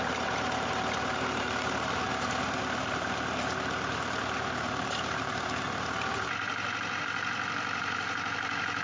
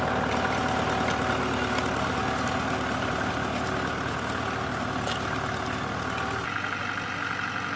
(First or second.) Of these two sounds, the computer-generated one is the first